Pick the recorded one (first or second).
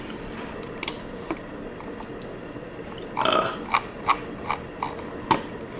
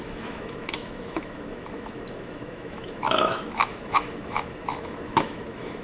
first